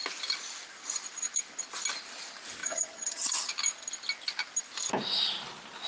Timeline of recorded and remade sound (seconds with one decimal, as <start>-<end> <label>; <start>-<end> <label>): 0.0-2.6 recorded; 2.6-3.5 remade; 3.5-5.9 recorded